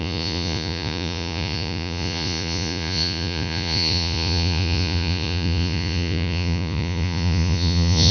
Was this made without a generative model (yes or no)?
no